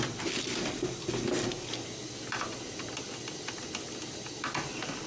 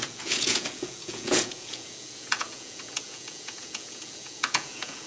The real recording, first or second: first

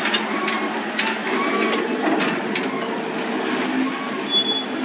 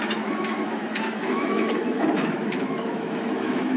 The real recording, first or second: first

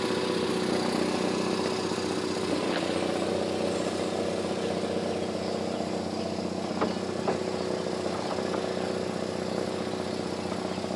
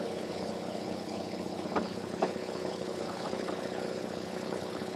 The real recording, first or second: first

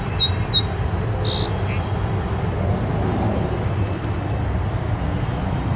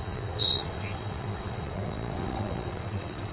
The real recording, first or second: first